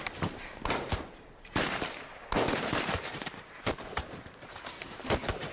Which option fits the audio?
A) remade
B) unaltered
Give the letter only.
A